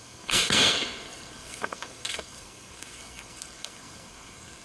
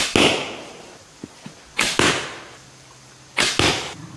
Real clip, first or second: second